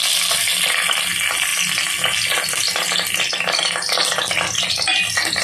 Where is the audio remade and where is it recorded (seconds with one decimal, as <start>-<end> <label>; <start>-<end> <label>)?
0.0-5.4 recorded